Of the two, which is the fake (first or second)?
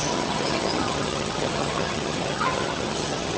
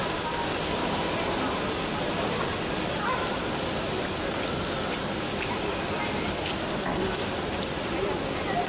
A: first